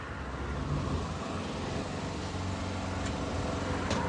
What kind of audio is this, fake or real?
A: real